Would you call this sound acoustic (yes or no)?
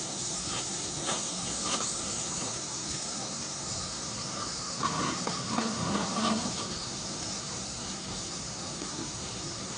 no